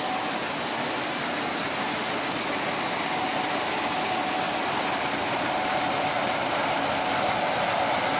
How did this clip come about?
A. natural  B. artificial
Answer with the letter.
A